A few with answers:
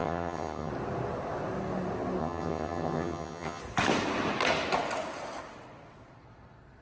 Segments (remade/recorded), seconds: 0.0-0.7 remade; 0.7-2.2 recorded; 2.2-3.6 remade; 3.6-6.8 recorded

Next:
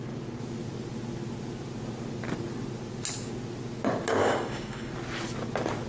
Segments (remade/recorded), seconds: 0.0-4.2 recorded; 4.2-4.9 remade; 4.9-5.9 recorded

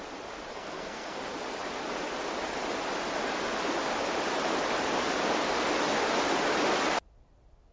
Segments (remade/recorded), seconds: 0.0-0.5 recorded; 0.5-1.2 remade; 1.2-7.7 recorded